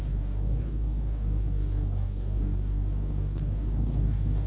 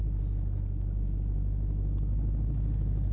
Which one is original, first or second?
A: second